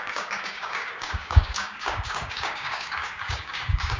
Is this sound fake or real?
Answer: fake